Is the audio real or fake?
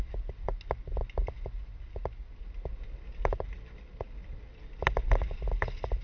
real